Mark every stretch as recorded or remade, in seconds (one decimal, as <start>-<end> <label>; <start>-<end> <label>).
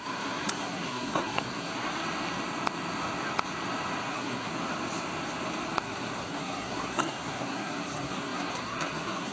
0.0-1.7 remade; 1.7-4.1 recorded; 4.1-4.5 remade; 4.5-5.8 recorded; 5.8-9.3 remade